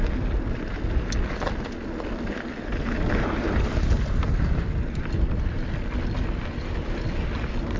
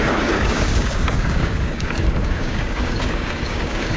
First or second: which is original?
first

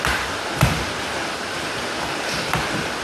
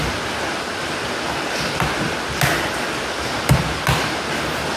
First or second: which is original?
second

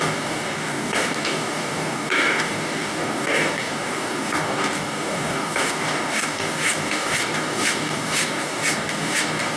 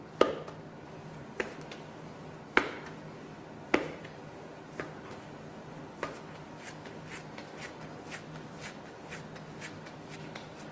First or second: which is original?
second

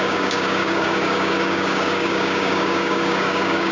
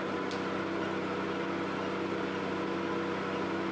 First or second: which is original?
second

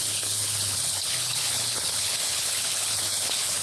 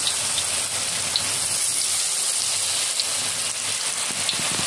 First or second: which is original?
second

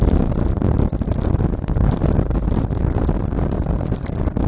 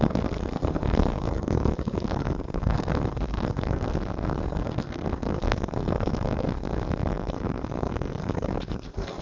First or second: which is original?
first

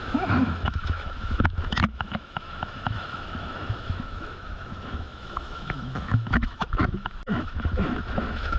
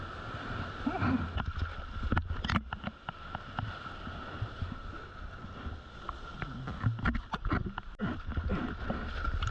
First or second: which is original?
second